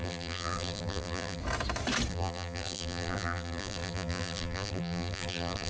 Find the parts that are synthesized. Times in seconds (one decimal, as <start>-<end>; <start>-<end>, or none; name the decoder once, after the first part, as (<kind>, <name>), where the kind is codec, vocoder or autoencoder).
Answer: 0.0-1.4 (vocoder, BigVGAN v2); 2.1-5.7